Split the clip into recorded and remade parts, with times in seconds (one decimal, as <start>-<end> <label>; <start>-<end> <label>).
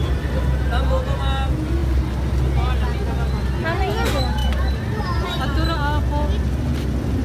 0.0-7.2 recorded